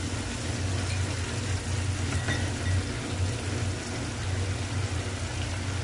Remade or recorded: recorded